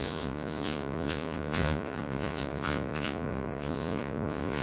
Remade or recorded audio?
remade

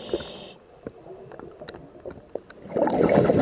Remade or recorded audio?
recorded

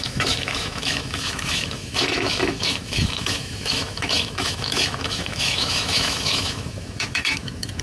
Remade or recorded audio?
remade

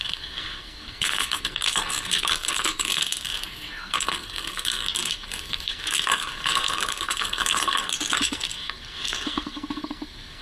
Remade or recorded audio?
remade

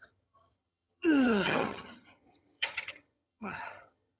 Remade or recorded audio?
remade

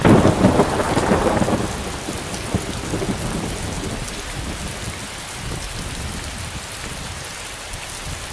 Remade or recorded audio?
recorded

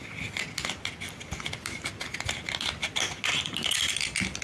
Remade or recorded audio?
recorded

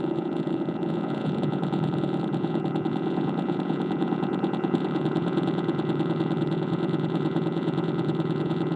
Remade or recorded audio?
remade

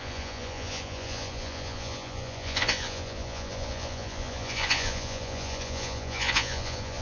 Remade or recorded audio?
remade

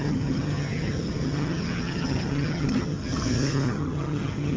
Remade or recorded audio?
remade